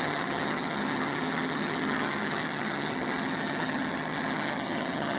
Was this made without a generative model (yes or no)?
no